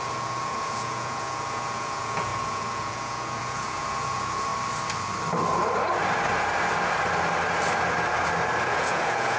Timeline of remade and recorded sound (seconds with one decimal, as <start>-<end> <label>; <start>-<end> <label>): 0.0-4.5 remade; 4.5-8.6 recorded; 8.6-9.4 remade